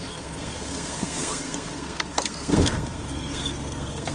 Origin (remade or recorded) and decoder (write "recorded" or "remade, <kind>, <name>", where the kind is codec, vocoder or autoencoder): remade, codec, SNAC